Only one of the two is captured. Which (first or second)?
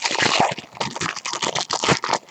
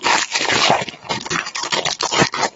first